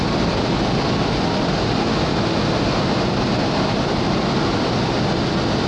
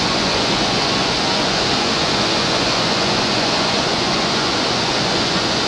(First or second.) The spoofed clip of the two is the second